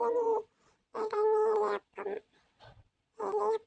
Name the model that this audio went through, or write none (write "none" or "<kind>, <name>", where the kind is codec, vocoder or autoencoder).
vocoder, WaveNeXt